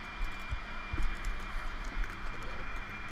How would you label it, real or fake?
real